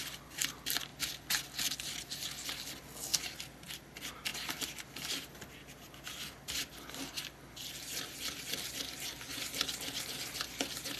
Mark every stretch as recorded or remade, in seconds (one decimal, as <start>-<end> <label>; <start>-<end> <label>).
0.0-11.0 recorded